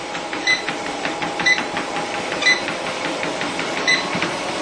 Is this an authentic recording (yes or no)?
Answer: no